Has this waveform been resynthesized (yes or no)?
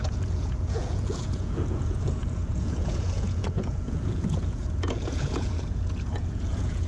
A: yes